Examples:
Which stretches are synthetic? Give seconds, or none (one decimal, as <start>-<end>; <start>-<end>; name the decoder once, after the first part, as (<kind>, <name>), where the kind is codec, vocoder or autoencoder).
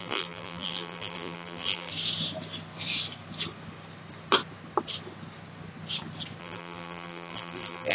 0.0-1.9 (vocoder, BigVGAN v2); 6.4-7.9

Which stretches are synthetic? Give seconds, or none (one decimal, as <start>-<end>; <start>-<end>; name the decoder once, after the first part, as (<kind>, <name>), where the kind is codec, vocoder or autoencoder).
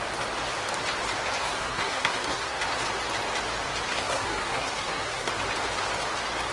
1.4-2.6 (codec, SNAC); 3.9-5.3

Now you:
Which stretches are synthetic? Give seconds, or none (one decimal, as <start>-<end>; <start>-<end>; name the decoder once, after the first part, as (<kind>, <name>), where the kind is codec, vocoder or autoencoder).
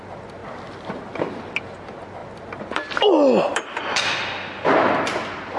none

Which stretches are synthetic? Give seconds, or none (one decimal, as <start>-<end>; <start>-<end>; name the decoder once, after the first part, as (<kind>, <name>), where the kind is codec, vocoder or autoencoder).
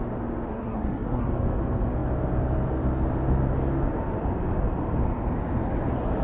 0.5-1.3 (codec, SNAC)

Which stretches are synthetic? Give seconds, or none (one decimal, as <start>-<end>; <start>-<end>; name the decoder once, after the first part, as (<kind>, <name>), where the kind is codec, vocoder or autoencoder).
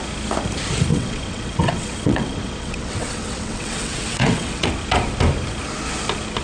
0.9-4.7 (vocoder, WaveNeXt)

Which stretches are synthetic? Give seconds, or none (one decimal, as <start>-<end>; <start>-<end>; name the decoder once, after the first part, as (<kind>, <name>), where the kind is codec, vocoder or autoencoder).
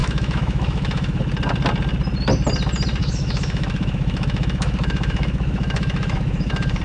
0.0-1.2 (autoencoder, DAC-VAE); 3.0-6.8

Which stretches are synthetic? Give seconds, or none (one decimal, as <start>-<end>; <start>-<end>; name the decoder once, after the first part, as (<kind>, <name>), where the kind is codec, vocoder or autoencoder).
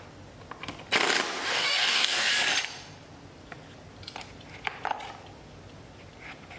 1.5-2.3 (codec, DAC)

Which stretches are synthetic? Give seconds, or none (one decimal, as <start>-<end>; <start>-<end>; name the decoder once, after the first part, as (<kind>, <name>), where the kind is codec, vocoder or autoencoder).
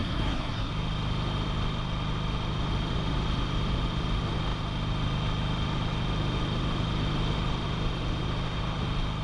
0.0-0.7 (codec, SNAC)